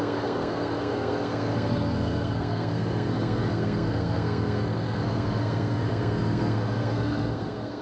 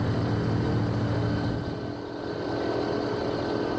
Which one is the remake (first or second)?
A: first